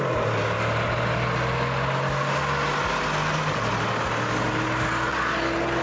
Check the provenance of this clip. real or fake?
real